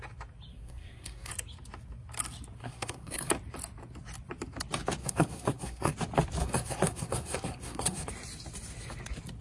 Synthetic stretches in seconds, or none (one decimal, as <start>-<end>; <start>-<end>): 0.5-1.3; 2.6-3.3; 5.0-5.9; 6.4-8.1

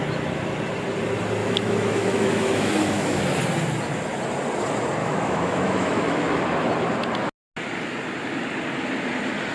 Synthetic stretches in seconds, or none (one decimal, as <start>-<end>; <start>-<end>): 1.4-3.2; 5.0-6.4

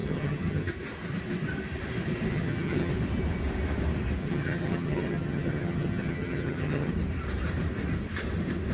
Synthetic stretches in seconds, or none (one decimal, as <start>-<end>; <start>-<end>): 0.0-0.7; 2.3-2.9; 4.2-6.9

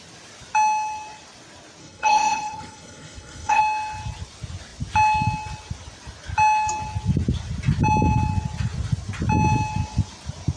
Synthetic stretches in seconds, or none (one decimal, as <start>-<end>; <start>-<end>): 1.8-3.6

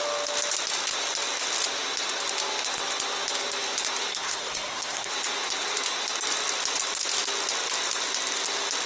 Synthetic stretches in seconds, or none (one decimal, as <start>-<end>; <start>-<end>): 4.1-5.1